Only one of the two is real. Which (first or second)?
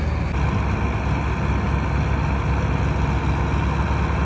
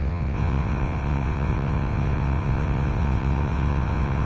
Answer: first